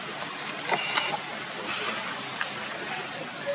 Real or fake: real